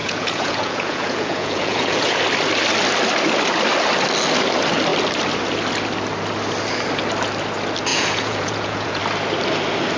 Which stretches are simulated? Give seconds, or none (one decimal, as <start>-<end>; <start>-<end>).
0.0-2.2; 7.9-9.0

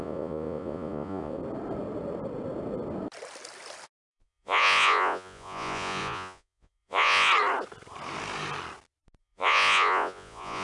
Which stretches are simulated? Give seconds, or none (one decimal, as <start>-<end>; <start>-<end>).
0.0-1.4; 4.1-7.3; 9.2-10.6

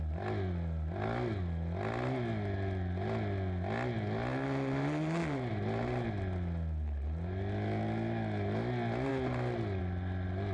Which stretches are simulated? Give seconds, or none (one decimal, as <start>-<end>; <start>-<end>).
none

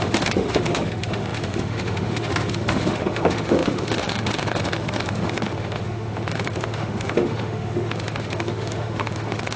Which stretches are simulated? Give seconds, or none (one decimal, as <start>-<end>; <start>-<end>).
0.0-9.6

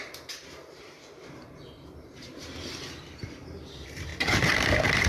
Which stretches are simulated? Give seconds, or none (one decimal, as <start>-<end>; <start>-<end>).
0.0-4.1

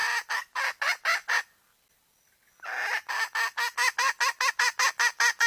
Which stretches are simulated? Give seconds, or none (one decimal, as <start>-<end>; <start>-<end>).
none

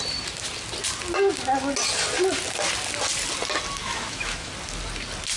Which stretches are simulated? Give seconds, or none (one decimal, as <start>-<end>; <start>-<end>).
3.8-4.5